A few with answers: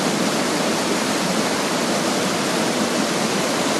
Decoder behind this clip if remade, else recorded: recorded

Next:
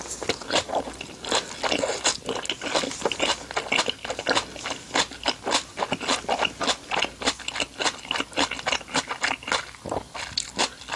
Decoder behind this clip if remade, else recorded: recorded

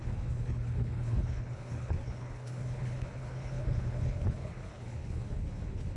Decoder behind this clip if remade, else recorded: remade, codec, HILCodec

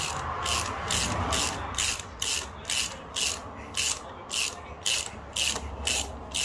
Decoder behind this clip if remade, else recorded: recorded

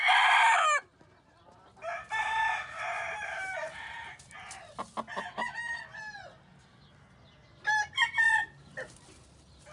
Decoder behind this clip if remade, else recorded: recorded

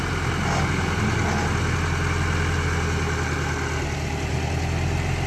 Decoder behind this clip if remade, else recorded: recorded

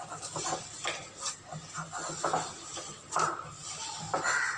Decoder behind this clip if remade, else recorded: recorded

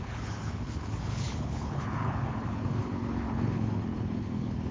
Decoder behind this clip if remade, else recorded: remade, codec, HILCodec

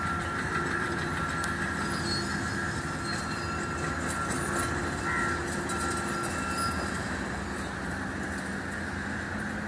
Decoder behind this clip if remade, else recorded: recorded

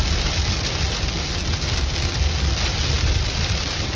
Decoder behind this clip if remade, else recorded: recorded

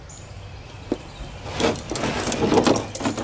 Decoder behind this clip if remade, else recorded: recorded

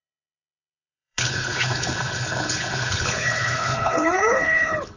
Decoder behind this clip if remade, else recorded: remade, codec, HILCodec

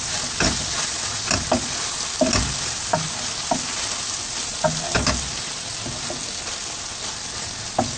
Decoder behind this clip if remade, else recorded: recorded